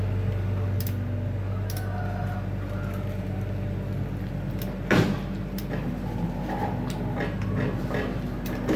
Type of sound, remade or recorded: recorded